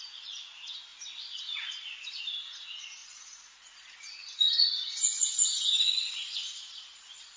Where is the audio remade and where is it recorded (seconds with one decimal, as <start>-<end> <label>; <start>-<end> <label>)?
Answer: 0.0-0.9 recorded; 0.9-2.2 remade; 2.2-3.0 recorded; 3.0-7.4 remade

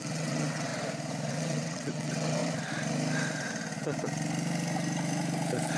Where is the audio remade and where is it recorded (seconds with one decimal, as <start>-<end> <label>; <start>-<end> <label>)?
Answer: 0.0-0.7 remade; 0.7-1.3 recorded; 1.3-2.4 remade; 2.4-5.8 recorded

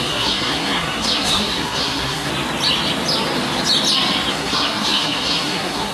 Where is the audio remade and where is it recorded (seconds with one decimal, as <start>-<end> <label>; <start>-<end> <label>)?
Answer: 0.0-2.3 remade; 2.3-4.3 recorded; 4.3-5.9 remade

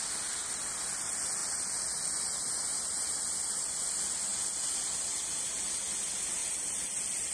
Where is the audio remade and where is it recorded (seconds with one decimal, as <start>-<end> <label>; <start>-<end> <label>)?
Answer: 0.0-6.4 recorded; 6.4-7.3 remade

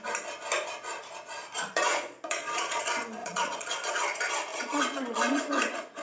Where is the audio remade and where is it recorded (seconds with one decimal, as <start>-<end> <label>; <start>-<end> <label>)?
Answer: 0.0-1.4 recorded; 1.4-2.8 remade; 2.8-3.2 recorded; 3.2-3.9 remade; 3.9-4.5 recorded; 4.5-5.4 remade; 5.4-6.0 recorded

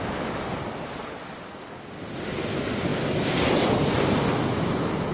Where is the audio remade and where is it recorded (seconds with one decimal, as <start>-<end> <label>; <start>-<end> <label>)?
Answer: 0.0-5.1 recorded

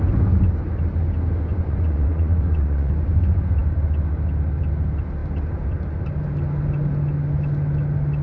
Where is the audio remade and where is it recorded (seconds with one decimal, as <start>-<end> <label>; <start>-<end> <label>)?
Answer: 0.0-1.5 recorded; 1.5-2.9 remade; 2.9-8.2 recorded